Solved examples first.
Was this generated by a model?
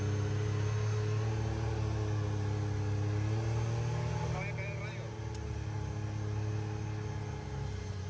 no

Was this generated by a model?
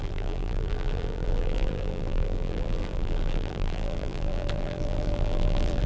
yes